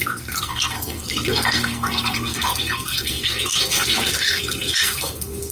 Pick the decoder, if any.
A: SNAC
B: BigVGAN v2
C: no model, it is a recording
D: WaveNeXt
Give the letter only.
A